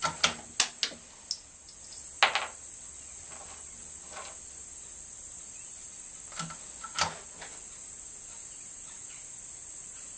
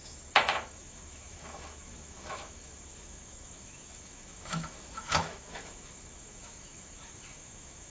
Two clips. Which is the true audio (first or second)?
first